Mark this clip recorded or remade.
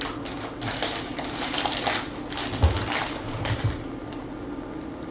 recorded